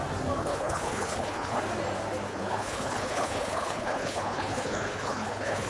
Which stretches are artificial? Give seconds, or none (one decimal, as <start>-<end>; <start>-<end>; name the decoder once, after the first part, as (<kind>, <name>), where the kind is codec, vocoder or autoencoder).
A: 0.4-1.6 (codec, HILCodec); 2.3-5.7